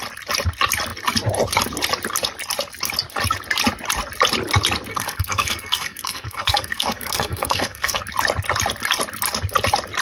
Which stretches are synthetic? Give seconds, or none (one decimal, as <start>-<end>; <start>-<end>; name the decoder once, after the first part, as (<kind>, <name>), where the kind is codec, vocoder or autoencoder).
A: 4.9-8.0 (codec, SNAC)